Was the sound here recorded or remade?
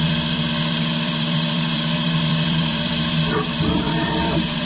remade